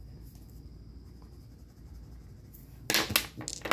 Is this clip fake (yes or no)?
no